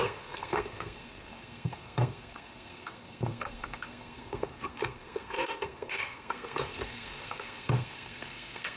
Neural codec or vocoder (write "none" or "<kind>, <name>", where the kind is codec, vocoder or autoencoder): codec, SNAC